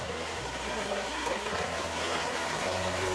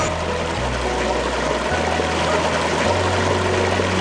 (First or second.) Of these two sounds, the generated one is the first